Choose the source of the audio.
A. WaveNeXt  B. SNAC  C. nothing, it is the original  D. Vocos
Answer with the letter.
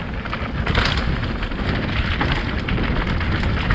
C